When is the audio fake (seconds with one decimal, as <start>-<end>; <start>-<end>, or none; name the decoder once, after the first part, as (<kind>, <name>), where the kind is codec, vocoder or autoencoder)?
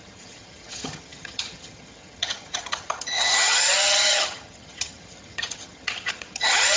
0.0-6.8 (vocoder, HiFi-GAN)